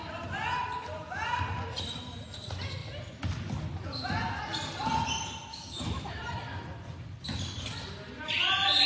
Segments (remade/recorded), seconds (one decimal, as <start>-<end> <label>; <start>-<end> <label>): 0.0-5.5 recorded; 5.5-6.2 remade; 6.2-8.9 recorded